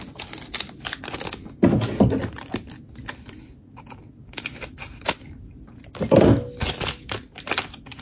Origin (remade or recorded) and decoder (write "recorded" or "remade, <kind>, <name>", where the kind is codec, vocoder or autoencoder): recorded